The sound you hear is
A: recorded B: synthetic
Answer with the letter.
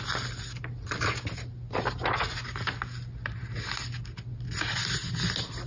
A